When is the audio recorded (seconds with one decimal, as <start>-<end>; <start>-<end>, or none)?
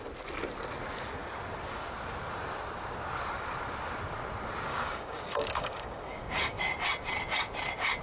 0.0-4.7; 6.6-8.0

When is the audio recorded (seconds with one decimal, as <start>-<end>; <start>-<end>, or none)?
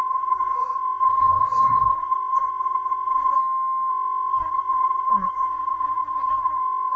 3.4-3.9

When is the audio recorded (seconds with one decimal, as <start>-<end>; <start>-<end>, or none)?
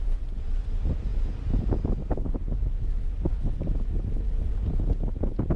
0.0-5.6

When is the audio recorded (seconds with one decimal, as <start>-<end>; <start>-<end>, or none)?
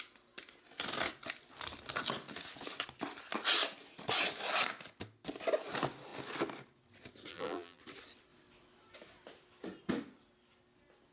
0.0-7.3; 7.8-11.1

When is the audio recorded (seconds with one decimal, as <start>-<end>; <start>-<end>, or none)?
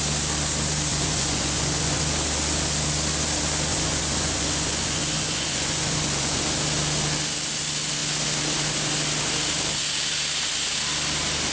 0.0-0.9; 2.0-3.7; 6.4-11.5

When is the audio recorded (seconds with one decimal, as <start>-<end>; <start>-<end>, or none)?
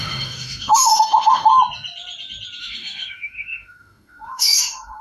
1.5-2.6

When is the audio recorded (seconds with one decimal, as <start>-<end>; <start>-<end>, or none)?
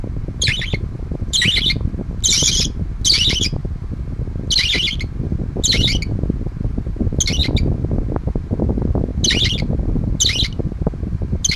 0.0-11.6